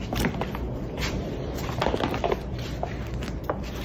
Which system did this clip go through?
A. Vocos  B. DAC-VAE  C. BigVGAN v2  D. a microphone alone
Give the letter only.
C